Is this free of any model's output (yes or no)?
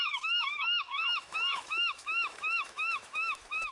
no